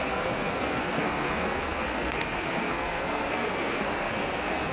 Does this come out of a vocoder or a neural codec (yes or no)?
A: yes